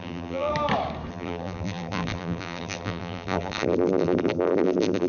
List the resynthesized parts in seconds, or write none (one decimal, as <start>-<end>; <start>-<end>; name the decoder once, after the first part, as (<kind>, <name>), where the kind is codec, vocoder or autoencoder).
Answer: 0.0-0.5 (vocoder, BigVGAN v2); 1.1-5.1